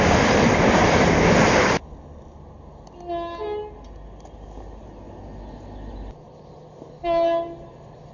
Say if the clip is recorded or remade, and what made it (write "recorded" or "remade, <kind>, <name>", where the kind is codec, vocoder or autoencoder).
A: recorded